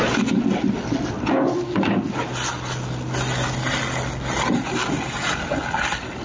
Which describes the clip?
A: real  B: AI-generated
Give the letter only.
A